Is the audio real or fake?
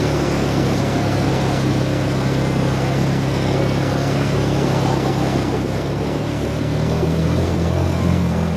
fake